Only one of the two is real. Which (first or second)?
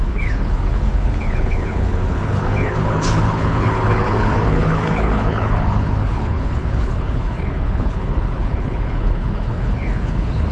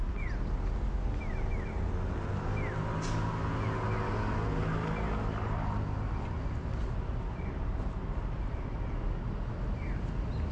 second